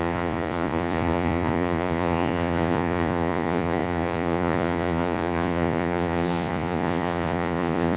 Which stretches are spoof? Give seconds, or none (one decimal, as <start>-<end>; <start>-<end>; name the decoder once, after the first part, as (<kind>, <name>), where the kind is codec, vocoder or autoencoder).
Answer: 0.0-8.0 (vocoder, Vocos)